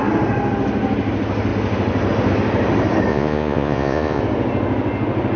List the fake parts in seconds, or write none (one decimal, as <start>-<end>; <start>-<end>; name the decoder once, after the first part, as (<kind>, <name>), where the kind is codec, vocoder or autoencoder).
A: 3.1-4.2 (vocoder, Vocos)